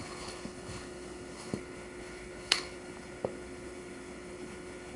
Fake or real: fake